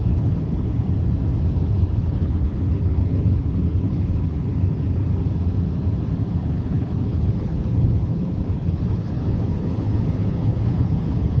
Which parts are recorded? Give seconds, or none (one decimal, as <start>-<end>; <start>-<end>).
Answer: 0.7-1.5; 4.5-6.4